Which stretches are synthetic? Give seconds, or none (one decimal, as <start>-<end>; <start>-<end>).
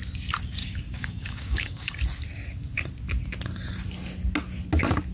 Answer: 0.6-2.0